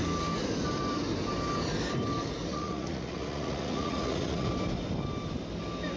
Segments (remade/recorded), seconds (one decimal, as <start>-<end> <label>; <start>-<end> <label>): 0.0-2.5 recorded; 2.5-4.5 remade; 4.5-6.0 recorded